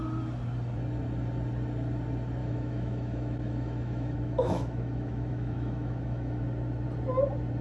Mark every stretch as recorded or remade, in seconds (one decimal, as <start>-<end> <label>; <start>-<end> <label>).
0.0-2.4 recorded; 2.4-6.4 remade; 6.4-7.6 recorded